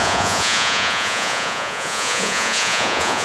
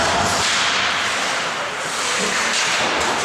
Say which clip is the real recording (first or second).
second